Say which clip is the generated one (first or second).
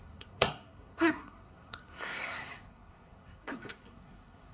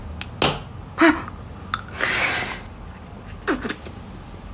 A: first